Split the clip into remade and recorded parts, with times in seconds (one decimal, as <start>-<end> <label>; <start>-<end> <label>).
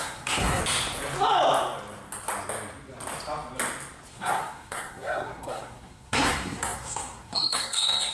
0.0-0.6 remade; 0.6-4.1 recorded; 4.1-8.1 remade